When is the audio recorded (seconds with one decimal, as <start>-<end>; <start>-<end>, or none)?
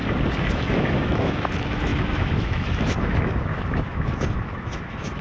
0.0-0.5